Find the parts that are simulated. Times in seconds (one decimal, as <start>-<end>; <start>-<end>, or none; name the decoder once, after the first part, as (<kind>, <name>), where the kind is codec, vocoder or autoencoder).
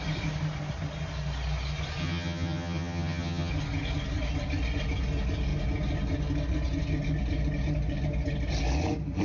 2.0-3.5 (vocoder, HiFi-GAN)